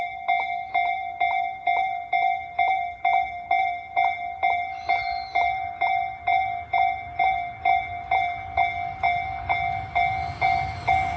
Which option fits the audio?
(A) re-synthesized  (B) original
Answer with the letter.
B